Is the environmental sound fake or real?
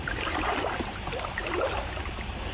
real